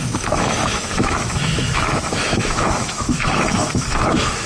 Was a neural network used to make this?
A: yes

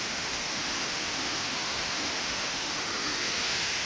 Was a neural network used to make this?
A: yes